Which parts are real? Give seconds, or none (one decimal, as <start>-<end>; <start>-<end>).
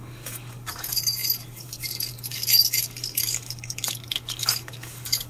none